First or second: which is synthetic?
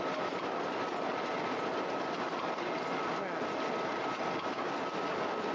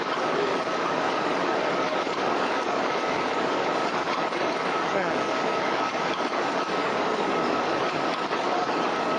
second